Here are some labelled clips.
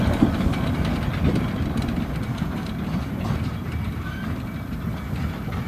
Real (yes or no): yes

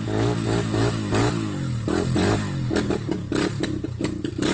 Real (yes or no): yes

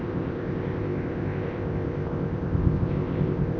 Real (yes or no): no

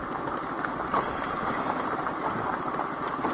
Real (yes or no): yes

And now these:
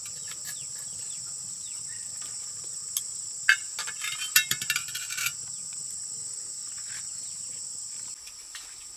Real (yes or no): yes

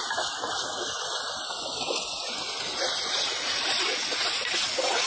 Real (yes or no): yes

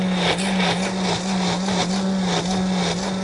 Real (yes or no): yes